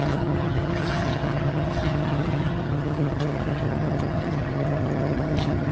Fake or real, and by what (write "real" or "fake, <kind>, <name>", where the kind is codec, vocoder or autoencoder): fake, vocoder, HiFi-GAN